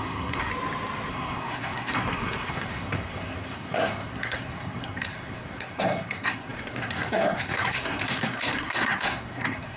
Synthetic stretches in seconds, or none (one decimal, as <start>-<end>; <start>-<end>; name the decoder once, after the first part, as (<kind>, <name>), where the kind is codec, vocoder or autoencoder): 0.0-0.5 (codec, SNAC); 1.1-9.8